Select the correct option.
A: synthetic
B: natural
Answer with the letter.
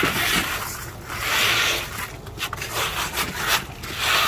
B